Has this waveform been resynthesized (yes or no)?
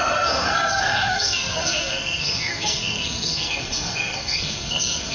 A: yes